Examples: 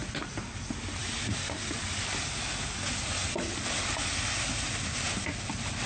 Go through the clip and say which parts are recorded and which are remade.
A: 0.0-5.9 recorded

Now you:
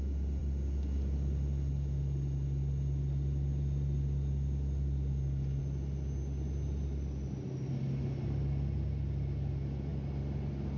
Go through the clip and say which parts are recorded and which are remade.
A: 0.0-10.8 recorded

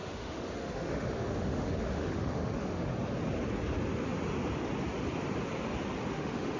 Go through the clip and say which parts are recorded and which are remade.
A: 0.0-2.9 remade; 2.9-6.1 recorded; 6.1-6.6 remade

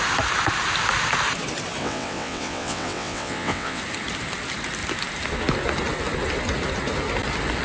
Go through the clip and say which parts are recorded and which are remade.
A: 0.0-1.8 recorded; 1.8-3.8 remade; 3.8-7.6 recorded

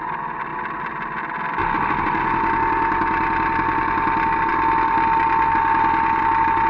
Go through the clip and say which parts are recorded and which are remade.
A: 0.0-6.7 recorded

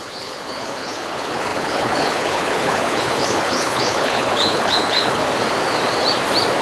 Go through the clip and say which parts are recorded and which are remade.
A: 0.0-5.2 remade; 5.2-6.6 recorded